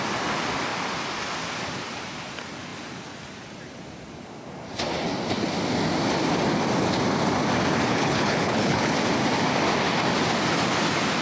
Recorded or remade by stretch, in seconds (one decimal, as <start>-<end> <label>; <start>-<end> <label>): 0.0-7.9 recorded; 7.9-8.9 remade; 8.9-11.2 recorded